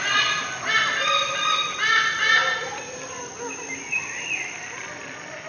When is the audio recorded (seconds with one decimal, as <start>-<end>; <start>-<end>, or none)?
0.0-5.5

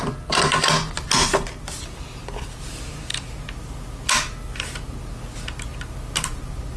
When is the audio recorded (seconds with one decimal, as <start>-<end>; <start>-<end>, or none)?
0.0-6.8

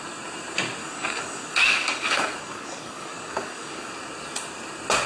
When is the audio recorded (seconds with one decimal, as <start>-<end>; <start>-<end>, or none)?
0.0-0.8; 3.9-5.1